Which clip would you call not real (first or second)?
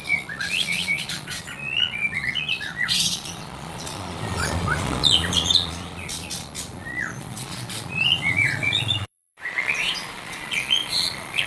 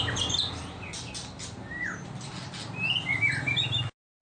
first